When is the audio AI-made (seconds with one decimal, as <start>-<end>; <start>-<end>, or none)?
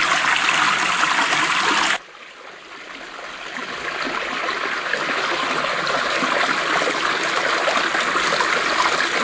none